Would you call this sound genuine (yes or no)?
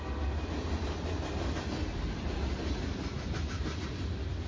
yes